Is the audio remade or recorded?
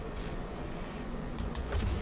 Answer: remade